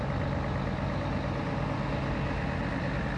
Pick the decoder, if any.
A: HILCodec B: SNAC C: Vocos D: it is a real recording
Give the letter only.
D